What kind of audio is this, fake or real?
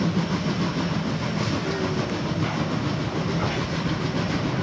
real